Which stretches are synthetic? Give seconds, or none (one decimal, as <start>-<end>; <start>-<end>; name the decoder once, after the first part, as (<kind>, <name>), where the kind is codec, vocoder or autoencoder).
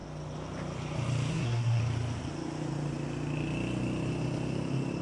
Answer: 1.3-1.8 (codec, SNAC)